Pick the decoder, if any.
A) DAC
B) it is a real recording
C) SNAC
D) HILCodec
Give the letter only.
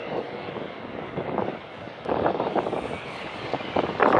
A